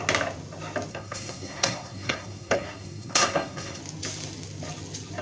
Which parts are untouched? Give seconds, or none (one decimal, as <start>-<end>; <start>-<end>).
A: 0.0-0.9; 3.8-5.2